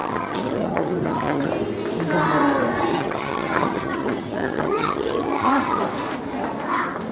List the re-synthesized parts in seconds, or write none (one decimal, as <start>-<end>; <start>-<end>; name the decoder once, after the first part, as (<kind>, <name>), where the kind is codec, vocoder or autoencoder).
0.0-1.5 (vocoder, HiFi-GAN); 2.9-5.8